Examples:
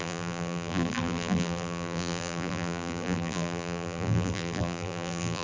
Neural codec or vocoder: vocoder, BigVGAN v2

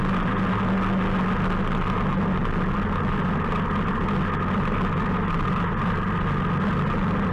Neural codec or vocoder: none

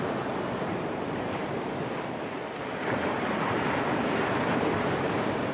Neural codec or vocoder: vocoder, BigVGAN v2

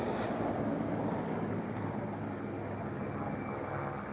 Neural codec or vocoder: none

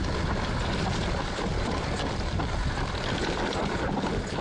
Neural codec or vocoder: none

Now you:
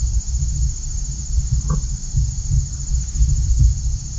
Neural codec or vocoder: none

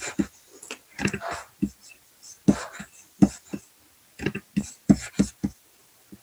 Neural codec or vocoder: none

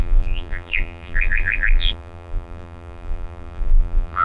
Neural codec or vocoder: vocoder, BigVGAN v2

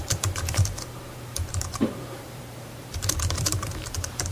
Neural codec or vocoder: vocoder, BigVGAN v2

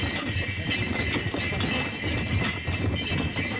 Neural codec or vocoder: vocoder, BigVGAN v2